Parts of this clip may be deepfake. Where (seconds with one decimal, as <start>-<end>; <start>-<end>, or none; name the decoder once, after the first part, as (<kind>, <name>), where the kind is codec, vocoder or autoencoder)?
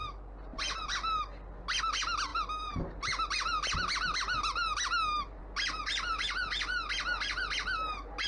none